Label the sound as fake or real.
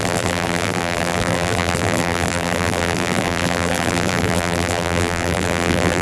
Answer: fake